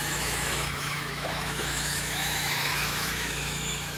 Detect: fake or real fake